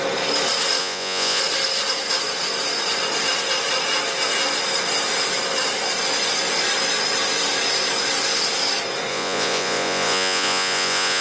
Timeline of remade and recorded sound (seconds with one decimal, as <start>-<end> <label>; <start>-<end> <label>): 0.0-0.8 recorded; 0.8-1.4 remade; 1.4-9.1 recorded; 9.1-11.2 remade